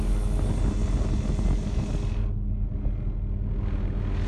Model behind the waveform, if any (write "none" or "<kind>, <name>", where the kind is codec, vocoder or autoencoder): none